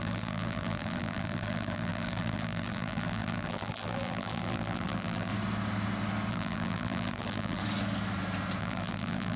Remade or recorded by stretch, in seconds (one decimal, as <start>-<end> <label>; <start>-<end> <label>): 0.0-5.3 remade; 5.3-6.3 recorded; 6.3-7.6 remade; 7.6-8.6 recorded; 8.6-9.4 remade